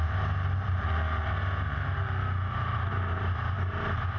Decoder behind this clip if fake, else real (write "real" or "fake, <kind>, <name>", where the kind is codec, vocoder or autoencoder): real